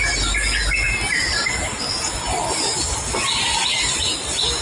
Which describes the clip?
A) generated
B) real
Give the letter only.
B